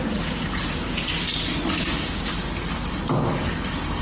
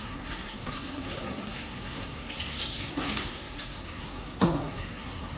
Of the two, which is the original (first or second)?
first